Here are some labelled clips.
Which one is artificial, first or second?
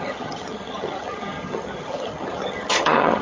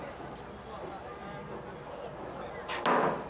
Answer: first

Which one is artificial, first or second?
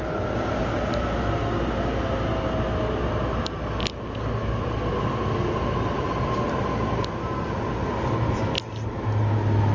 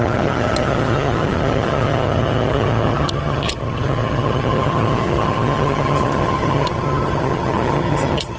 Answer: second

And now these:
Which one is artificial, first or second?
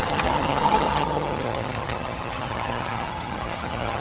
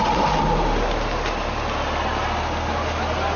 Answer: first